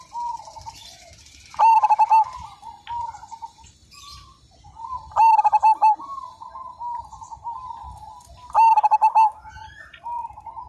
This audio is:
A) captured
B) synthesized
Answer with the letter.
A